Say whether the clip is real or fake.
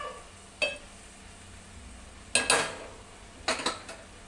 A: real